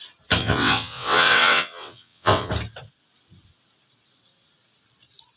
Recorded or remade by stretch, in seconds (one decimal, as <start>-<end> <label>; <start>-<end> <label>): 0.0-0.4 recorded; 0.4-2.5 remade; 2.5-5.4 recorded